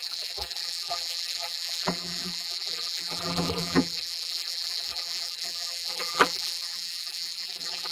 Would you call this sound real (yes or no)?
no